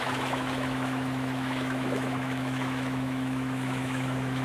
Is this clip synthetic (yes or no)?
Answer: yes